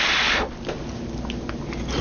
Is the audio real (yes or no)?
yes